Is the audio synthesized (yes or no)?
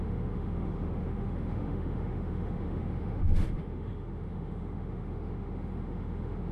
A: yes